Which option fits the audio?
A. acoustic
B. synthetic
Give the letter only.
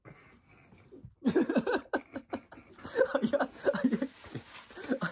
A